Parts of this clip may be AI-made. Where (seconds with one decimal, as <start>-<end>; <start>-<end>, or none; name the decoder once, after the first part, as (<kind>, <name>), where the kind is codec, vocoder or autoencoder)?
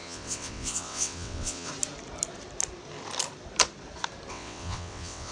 0.0-1.7 (vocoder, WaveNeXt); 4.3-5.3